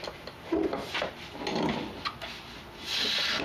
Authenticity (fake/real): real